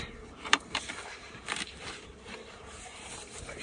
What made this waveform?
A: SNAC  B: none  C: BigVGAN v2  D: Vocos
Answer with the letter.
C